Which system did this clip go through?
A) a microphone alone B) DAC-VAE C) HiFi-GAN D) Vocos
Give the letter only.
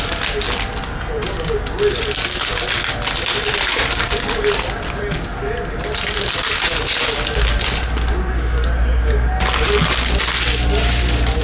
A